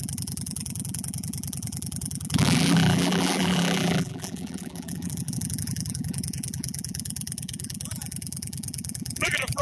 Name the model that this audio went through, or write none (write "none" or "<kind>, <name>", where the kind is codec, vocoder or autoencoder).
vocoder, BigVGAN v2